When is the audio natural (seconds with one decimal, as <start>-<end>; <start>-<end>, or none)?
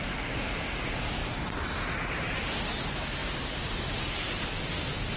0.0-5.2